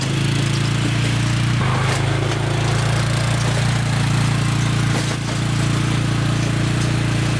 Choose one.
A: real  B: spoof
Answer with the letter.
A